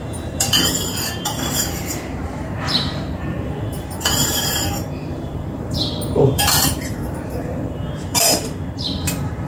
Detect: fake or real fake